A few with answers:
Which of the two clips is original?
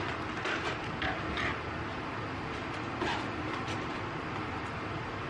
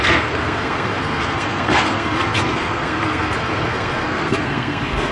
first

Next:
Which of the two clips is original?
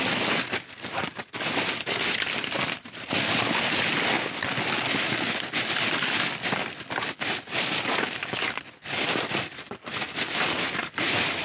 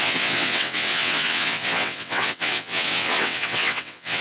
first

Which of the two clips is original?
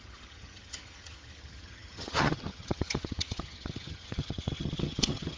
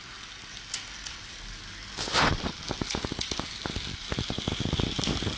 second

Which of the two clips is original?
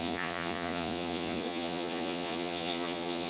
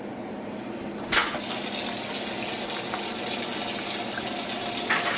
second